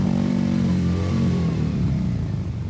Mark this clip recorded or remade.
remade